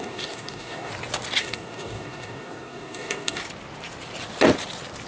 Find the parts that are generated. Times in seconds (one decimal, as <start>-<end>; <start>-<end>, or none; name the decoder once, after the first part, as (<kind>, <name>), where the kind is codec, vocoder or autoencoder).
0.0-0.9 (codec, DAC); 1.4-3.4